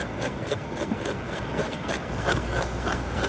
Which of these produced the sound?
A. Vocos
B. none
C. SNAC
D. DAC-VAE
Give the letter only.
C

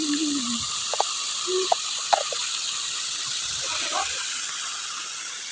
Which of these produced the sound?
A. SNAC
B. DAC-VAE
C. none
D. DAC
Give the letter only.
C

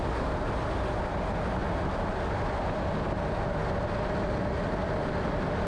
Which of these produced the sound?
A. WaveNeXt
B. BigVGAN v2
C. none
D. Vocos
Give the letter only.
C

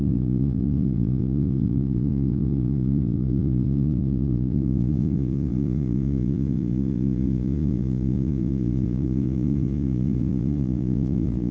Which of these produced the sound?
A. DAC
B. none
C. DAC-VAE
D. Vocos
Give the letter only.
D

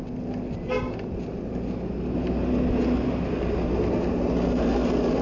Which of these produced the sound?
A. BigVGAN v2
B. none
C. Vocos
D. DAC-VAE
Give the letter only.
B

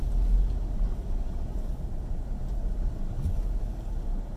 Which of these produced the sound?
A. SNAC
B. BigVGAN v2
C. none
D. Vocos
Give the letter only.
C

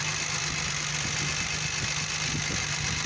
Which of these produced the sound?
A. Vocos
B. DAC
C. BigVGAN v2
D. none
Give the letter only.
D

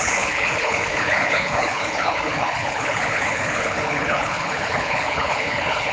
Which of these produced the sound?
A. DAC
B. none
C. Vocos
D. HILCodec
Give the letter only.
D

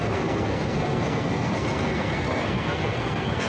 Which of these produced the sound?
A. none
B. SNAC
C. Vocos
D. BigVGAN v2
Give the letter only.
B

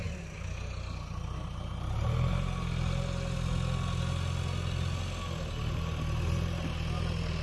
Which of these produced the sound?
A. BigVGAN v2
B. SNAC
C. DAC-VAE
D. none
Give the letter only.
D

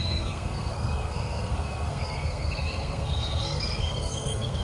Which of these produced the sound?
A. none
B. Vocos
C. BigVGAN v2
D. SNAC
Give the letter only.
D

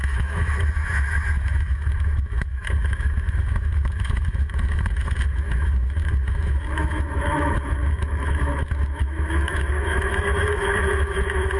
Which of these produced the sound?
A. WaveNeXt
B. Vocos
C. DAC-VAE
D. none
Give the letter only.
C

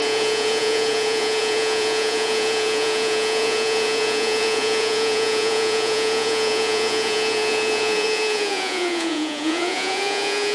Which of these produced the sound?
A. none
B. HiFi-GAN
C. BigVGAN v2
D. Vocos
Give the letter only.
D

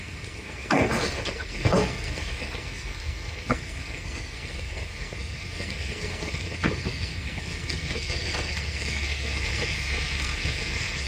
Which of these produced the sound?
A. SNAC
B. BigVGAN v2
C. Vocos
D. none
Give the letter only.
A